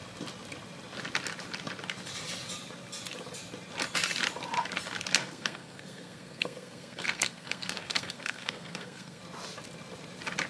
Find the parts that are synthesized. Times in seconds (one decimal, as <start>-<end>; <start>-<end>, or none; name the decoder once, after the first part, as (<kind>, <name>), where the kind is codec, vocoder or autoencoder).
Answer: 5.2-9.2 (codec, SNAC)